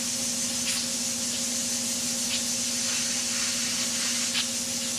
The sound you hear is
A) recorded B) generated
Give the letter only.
A